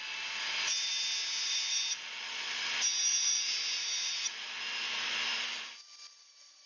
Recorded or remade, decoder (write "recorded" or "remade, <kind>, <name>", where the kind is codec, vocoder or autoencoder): remade, vocoder, BigVGAN v2